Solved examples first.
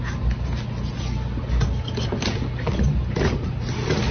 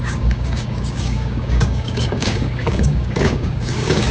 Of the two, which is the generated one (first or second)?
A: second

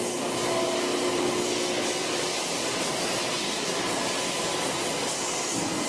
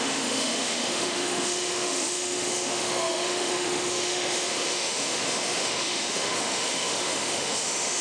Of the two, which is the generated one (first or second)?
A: second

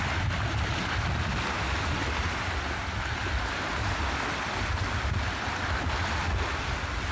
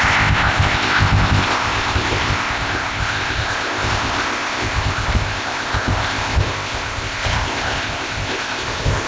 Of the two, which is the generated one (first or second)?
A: second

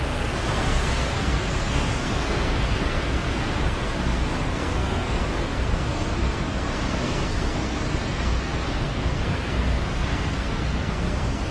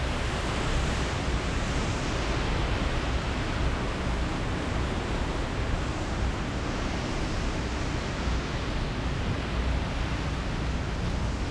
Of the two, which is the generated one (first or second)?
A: first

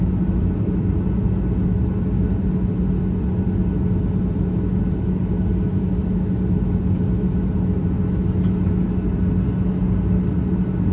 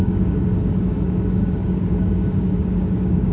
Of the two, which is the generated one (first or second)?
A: second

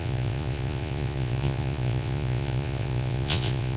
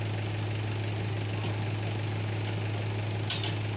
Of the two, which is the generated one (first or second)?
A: first